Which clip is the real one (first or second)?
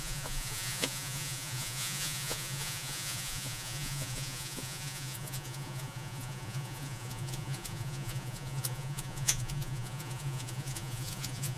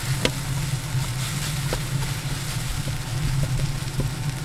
second